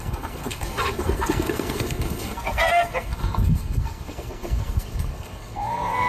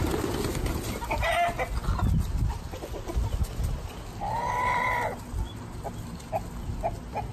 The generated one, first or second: first